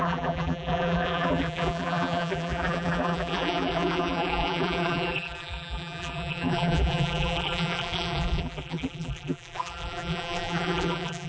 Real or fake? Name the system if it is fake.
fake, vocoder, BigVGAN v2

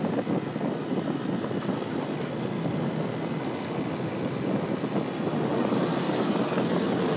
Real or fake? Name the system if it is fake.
real